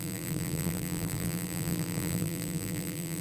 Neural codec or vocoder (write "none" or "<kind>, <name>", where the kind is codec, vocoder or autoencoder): vocoder, BigVGAN v2